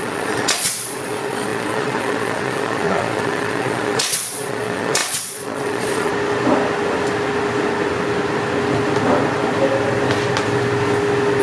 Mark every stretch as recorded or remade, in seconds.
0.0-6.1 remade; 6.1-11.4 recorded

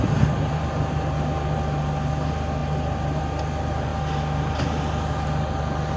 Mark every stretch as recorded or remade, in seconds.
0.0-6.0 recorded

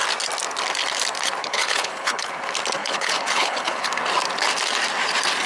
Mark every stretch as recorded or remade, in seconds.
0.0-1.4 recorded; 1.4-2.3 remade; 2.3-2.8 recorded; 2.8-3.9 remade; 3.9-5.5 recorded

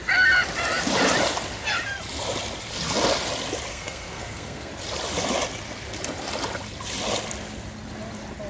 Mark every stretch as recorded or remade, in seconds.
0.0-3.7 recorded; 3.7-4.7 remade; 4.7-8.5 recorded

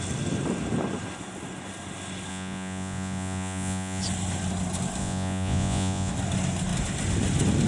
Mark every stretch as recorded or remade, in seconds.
0.0-2.3 recorded; 2.3-4.0 remade; 4.0-5.0 recorded; 5.0-6.1 remade; 6.1-7.7 recorded

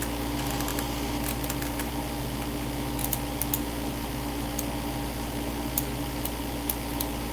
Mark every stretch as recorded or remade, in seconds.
0.0-0.7 recorded; 0.7-1.9 remade; 1.9-7.3 recorded

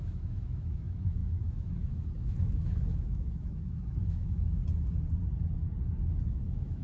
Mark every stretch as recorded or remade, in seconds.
0.0-4.6 remade; 4.6-6.3 recorded; 6.3-6.8 remade

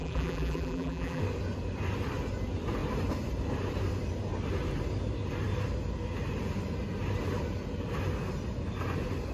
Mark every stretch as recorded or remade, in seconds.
0.0-1.2 remade; 1.2-9.3 recorded